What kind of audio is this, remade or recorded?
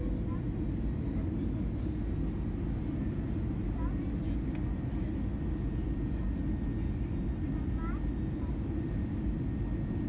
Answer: recorded